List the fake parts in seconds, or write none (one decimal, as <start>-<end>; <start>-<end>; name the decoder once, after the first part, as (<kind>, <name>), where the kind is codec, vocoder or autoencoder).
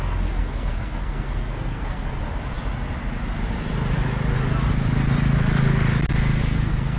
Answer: 0.0-2.2 (codec, SNAC); 6.4-7.0